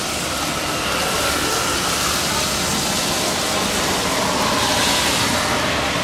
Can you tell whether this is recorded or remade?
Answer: recorded